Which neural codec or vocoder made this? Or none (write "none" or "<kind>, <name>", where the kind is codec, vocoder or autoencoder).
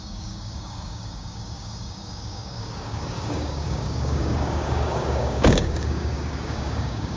codec, DAC